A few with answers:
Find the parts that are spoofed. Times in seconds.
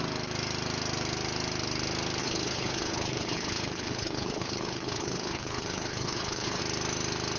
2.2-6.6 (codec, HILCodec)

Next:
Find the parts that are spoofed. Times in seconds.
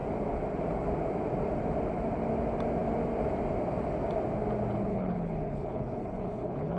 4.9-6.8 (codec, HILCodec)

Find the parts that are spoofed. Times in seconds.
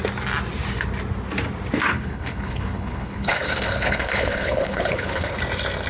1.9-5.4 (codec, HILCodec)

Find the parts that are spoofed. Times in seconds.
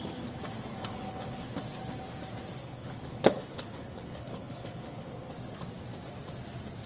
0.8-1.6 (codec, HILCodec); 2.6-5.3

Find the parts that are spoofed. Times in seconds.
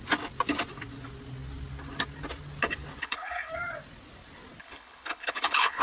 3.0-3.5 (codec, HILCodec); 4.6-5.8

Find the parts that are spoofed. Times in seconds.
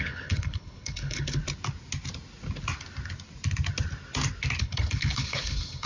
0.0-1.4 (codec, HILCodec); 4.6-5.9